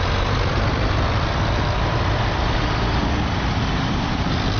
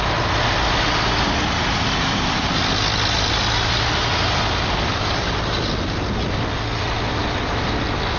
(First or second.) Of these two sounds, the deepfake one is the first